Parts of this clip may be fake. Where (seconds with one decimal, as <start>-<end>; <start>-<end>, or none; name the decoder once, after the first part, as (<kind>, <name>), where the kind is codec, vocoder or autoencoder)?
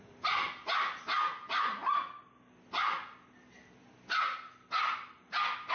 none